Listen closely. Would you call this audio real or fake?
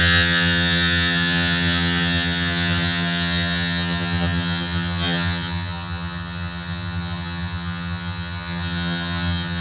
fake